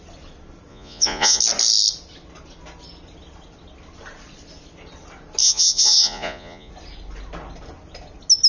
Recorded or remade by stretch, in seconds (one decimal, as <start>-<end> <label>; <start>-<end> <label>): 0.0-0.7 recorded; 0.7-1.4 remade; 1.4-5.4 recorded; 5.4-6.7 remade; 6.7-8.5 recorded

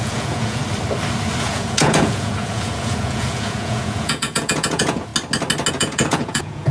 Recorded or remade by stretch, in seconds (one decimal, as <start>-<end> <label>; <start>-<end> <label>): 0.0-0.6 remade; 0.6-1.4 recorded; 1.4-5.1 remade; 5.1-5.7 recorded; 5.7-6.7 remade

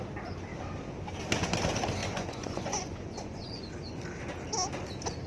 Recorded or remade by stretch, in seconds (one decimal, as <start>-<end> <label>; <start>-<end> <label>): 0.0-2.0 recorded; 2.0-3.7 remade; 3.7-5.3 recorded

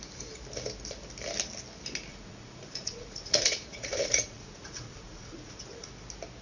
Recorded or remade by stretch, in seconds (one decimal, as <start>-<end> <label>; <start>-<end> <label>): 0.0-2.1 recorded; 2.1-5.9 remade; 5.9-6.4 recorded

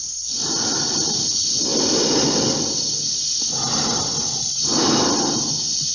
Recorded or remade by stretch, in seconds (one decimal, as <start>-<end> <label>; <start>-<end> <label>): 0.0-5.9 recorded